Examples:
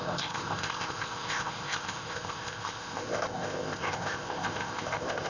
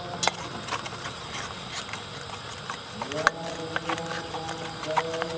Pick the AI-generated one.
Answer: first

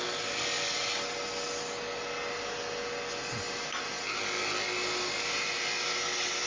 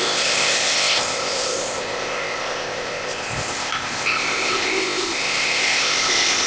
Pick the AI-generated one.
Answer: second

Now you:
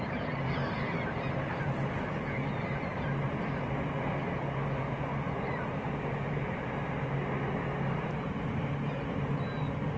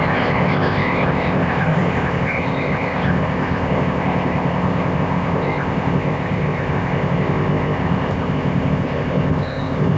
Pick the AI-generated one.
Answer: second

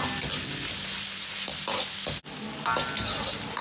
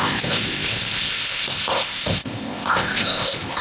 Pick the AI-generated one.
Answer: second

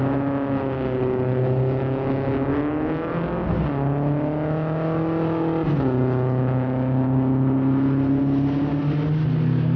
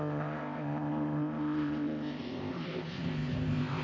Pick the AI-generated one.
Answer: second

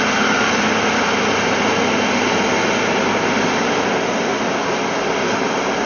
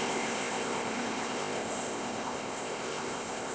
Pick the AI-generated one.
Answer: second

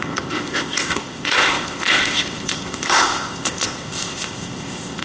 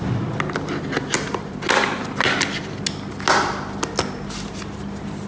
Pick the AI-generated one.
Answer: first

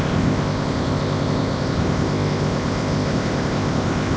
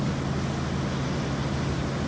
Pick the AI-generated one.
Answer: first